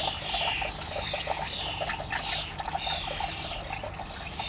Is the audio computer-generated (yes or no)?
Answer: no